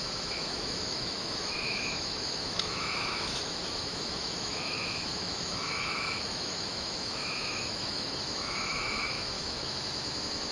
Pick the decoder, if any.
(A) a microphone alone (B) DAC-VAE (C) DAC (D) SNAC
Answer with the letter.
B